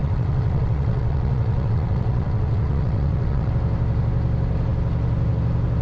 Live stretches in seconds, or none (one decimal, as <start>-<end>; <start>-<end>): 3.5-5.8